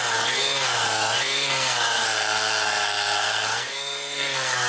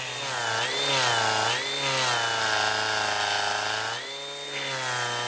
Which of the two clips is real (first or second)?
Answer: second